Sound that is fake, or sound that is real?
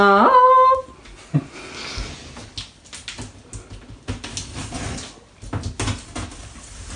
real